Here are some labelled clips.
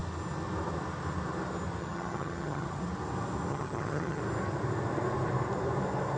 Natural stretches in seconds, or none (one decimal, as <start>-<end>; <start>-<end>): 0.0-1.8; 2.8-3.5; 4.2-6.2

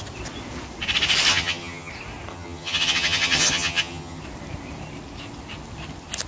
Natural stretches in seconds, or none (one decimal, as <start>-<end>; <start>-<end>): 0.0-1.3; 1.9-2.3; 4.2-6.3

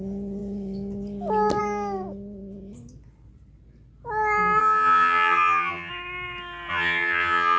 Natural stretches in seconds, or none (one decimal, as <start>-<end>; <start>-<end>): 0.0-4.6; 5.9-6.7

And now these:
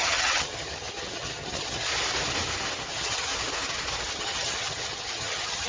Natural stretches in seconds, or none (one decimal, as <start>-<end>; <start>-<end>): 1.9-2.9; 3.3-4.1

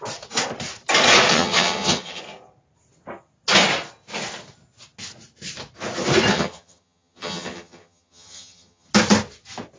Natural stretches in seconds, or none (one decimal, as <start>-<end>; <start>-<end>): 0.0-1.3; 2.2-6.3; 8.9-9.8

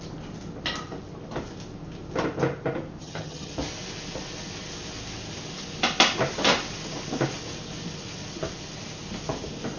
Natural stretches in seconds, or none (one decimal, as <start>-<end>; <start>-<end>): 0.0-3.0; 3.5-9.8

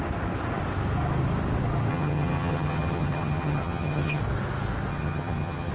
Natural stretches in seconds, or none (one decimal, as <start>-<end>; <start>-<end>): 0.0-1.9; 4.2-4.9

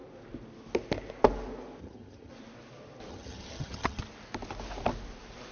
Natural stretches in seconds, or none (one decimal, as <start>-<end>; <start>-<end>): 0.0-1.8; 2.3-3.1; 4.0-5.5